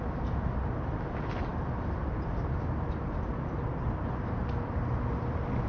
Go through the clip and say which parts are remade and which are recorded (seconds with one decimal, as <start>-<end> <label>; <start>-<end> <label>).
0.0-5.7 recorded